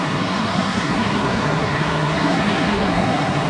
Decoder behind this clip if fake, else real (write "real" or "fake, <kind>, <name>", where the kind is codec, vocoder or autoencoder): fake, codec, SNAC